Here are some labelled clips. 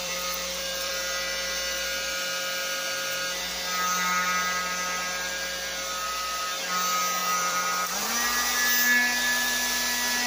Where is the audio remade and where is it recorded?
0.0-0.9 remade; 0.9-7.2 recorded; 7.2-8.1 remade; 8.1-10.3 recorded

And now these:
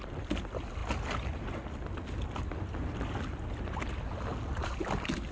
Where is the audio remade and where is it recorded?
0.0-5.3 recorded

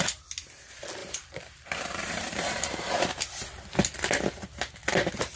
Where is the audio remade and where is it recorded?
0.0-1.0 recorded; 1.0-3.2 remade; 3.2-5.4 recorded